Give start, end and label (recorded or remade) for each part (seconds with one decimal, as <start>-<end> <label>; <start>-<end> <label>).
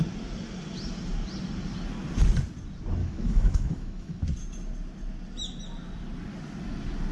0.0-3.0 recorded; 3.0-4.2 remade; 4.2-7.1 recorded